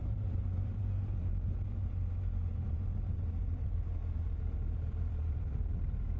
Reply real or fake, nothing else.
fake